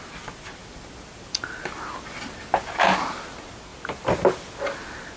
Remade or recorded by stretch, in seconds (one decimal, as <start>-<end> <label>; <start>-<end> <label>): 0.0-5.2 recorded